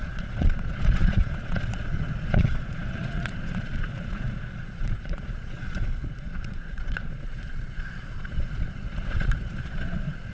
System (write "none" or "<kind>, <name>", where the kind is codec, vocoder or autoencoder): vocoder, Vocos